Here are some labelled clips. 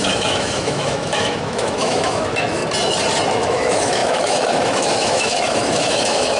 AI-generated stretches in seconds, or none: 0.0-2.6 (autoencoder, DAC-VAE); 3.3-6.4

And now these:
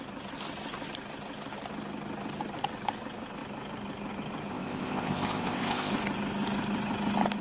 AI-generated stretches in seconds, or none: 4.5-5.9 (codec, ZipCodec)

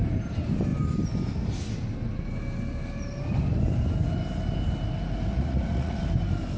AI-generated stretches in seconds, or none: 5.3-6.0 (vocoder, Vocos)